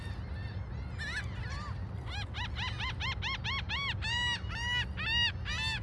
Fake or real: real